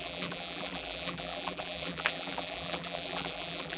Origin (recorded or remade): remade